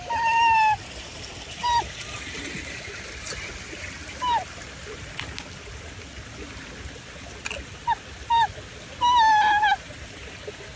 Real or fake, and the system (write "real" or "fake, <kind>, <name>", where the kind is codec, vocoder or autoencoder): real